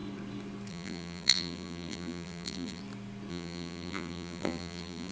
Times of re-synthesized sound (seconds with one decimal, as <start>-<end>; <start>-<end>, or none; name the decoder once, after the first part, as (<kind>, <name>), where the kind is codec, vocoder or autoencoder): 0.7-2.8 (vocoder, BigVGAN v2); 3.3-5.1